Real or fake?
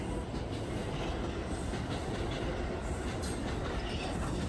real